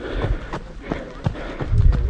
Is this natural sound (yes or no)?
yes